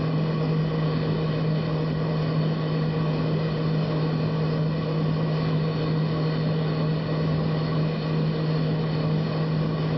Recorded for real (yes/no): yes